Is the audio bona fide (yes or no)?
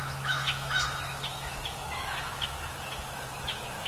no